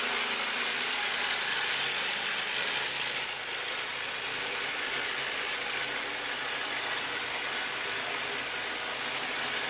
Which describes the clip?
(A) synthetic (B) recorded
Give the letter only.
B